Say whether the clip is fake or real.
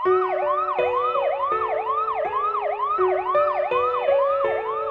real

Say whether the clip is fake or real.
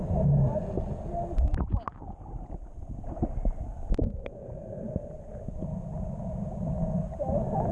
real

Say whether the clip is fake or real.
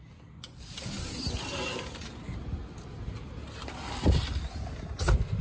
real